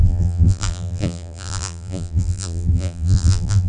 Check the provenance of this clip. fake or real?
fake